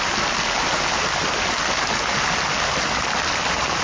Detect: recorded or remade recorded